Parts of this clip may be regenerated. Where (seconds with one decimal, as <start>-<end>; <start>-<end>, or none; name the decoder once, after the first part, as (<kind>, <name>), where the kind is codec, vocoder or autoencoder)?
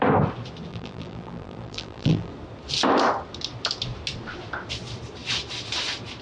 0.7-2.3 (vocoder, BigVGAN v2)